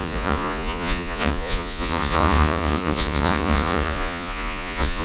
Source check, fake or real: fake